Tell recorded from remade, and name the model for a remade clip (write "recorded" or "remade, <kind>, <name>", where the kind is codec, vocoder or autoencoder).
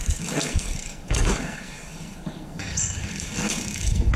remade, codec, SNAC